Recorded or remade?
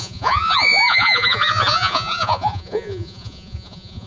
remade